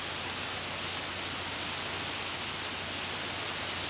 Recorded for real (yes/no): yes